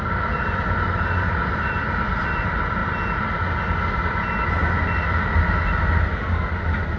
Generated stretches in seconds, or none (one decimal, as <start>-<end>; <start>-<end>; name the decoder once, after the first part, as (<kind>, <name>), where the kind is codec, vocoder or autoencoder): 0.0-2.8 (vocoder, BigVGAN v2); 5.0-7.0